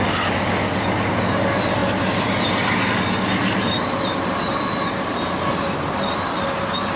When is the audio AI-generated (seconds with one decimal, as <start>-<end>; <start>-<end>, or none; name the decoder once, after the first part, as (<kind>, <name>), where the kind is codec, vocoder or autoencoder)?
none